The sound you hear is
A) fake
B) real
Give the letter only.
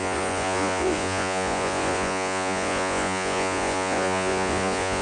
A